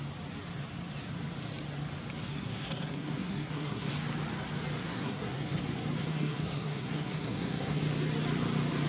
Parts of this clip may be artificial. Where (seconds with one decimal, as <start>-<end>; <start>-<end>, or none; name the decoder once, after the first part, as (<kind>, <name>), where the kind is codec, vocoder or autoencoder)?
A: 2.2-3.9 (codec, SNAC); 4.8-5.6; 6.0-7.8